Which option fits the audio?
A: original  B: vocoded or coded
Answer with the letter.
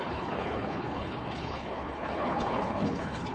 B